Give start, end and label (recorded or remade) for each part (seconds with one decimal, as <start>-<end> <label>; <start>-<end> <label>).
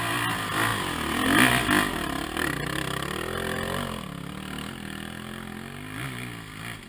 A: 0.0-6.9 recorded